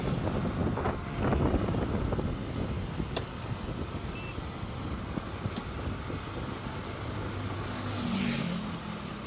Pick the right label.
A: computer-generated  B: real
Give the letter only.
B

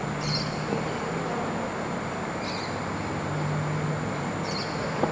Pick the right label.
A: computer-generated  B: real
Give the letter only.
B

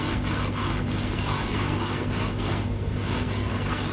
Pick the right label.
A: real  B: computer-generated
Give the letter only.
B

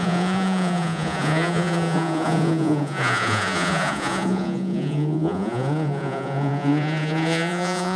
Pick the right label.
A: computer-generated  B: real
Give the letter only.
A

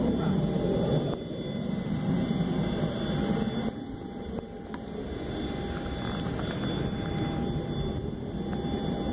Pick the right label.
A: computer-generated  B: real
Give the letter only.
B